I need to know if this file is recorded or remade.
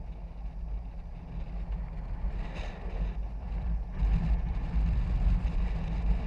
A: recorded